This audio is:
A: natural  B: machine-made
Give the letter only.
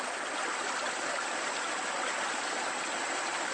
A